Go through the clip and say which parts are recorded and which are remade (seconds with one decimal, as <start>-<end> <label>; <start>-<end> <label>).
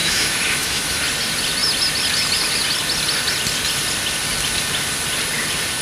0.0-1.0 remade; 1.0-5.8 recorded